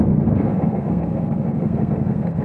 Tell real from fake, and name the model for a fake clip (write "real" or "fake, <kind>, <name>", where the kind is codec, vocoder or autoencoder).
fake, codec, SNAC